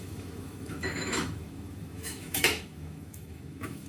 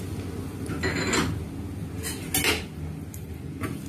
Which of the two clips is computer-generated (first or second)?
first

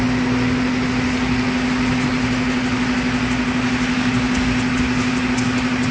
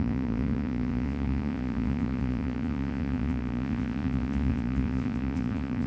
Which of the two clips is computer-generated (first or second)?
second